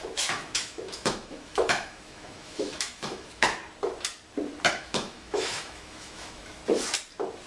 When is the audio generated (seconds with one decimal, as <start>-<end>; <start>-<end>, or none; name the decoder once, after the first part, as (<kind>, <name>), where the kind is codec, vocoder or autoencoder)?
0.0-3.6 (autoencoder, DAC-VAE); 4.7-6.6

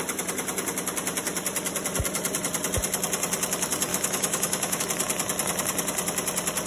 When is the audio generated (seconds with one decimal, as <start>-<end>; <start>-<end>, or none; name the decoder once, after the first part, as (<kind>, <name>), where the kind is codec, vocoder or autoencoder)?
3.9-4.8 (autoencoder, DAC-VAE)